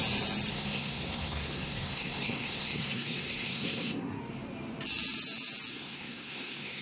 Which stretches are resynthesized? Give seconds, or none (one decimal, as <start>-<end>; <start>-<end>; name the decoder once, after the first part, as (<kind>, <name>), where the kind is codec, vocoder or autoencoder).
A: 0.5-4.2 (codec, SNAC); 5.7-6.8